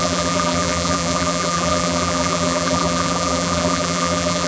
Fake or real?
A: fake